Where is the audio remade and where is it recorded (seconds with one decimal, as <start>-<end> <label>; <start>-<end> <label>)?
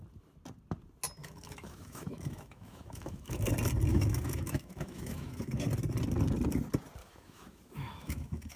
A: 0.0-1.2 recorded; 1.2-3.5 remade; 3.5-3.9 recorded; 3.9-5.7 remade; 5.7-7.0 recorded; 7.0-8.6 remade